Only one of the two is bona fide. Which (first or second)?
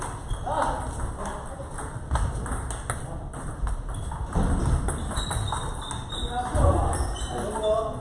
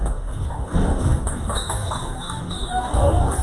first